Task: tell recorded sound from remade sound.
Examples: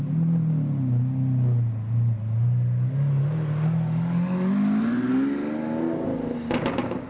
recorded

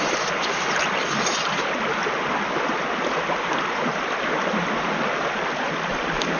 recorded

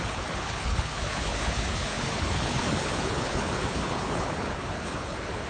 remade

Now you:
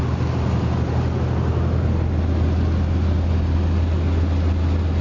recorded